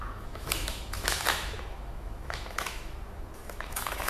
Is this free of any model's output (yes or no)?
no